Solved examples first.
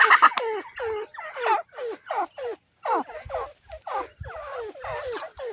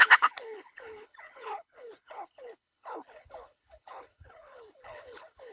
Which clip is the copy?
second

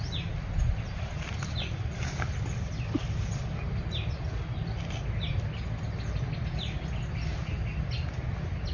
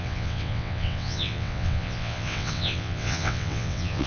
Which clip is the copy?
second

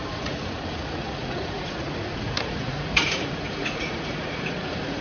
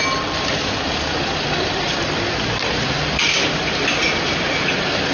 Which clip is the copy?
first